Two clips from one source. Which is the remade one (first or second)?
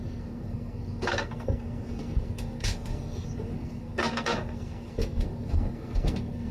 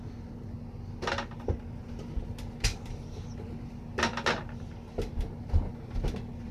first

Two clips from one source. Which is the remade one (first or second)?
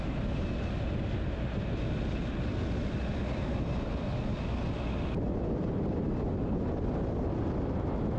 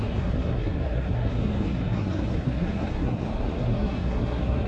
second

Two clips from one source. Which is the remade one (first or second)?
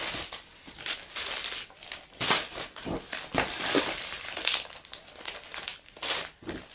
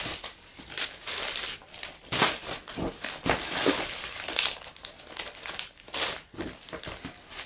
second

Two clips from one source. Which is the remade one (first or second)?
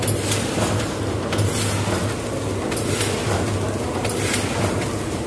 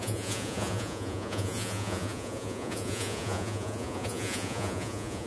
second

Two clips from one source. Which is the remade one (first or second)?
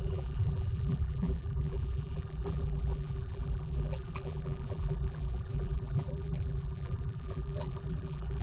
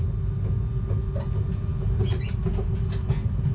first